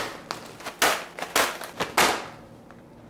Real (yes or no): yes